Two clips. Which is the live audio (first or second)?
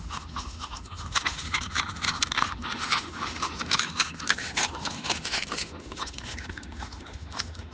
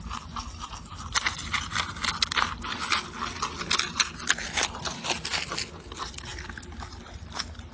second